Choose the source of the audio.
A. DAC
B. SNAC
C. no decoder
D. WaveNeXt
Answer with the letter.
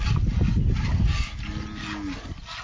C